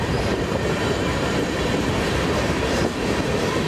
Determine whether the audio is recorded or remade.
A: remade